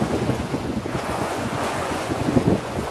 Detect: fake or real fake